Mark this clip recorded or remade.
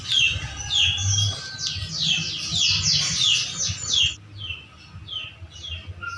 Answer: recorded